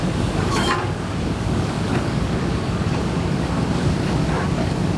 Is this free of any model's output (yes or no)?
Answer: no